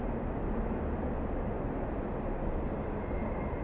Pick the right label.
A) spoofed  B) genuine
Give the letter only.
B